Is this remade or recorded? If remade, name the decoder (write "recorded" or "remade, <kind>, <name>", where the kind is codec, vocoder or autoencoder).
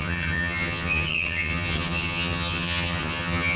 remade, vocoder, HiFi-GAN